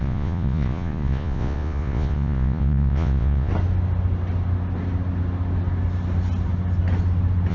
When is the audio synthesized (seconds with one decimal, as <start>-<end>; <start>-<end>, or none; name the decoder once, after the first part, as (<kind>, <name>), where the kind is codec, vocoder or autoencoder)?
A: 0.0-3.5 (vocoder, Vocos)